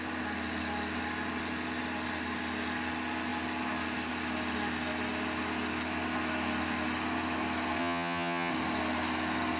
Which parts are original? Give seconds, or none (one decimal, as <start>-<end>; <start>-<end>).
0.0-7.8; 8.5-9.6